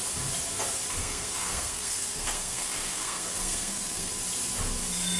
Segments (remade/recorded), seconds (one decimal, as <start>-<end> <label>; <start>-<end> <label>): 0.0-1.0 recorded; 1.0-4.1 remade; 4.1-5.2 recorded